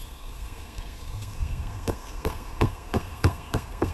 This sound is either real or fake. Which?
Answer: fake